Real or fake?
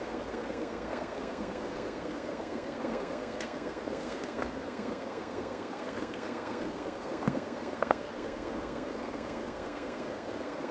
fake